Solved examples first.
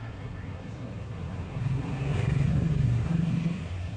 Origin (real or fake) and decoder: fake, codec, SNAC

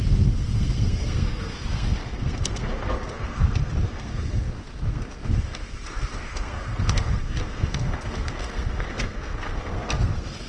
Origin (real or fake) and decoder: fake, codec, SNAC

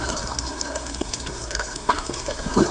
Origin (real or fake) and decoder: fake, codec, SNAC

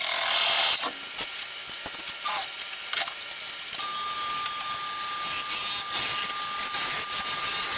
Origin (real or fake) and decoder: real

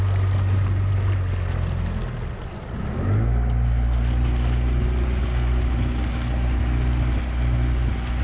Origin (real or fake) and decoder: real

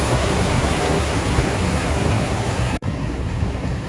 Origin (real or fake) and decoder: fake, codec, SNAC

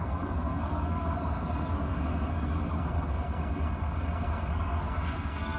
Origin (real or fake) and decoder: fake, codec, SNAC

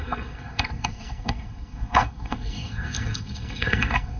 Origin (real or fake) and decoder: fake, codec, SNAC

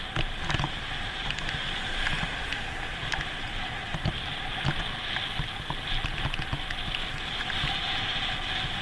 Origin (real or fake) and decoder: real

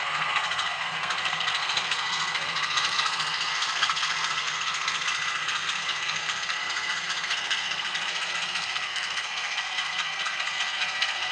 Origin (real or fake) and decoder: fake, codec, SNAC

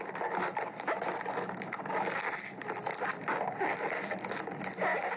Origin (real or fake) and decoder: real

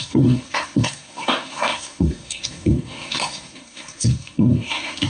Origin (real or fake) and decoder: fake, codec, SNAC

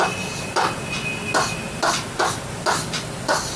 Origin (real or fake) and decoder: real